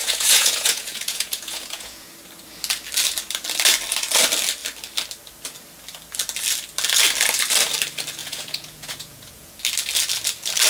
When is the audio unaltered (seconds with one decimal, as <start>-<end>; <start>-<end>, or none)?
2.1-8.2; 9.6-10.7